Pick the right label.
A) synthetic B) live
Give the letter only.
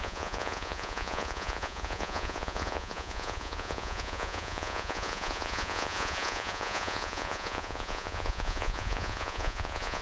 A